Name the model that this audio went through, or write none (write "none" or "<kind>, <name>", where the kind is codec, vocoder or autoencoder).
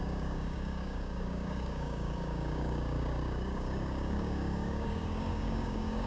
codec, DAC